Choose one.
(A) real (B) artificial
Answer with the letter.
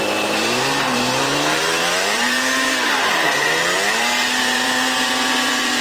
B